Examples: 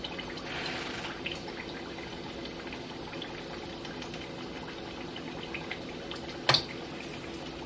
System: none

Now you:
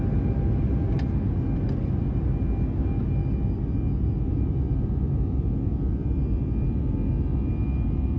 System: none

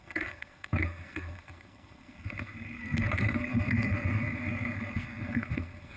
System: codec, SNAC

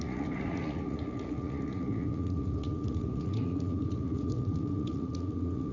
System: vocoder, Vocos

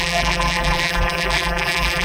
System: vocoder, BigVGAN v2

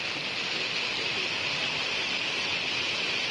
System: none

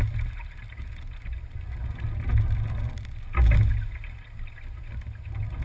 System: none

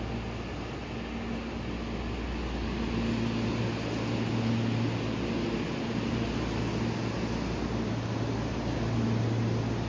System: none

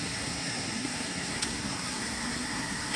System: codec, SNAC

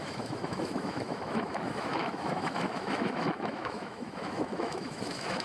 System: autoencoder, DAC-VAE